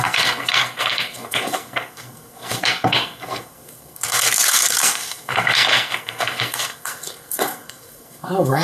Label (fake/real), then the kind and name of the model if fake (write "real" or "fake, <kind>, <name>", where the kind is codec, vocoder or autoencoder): fake, codec, SNAC